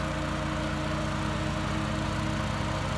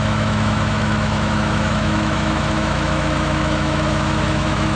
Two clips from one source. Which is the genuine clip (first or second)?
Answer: first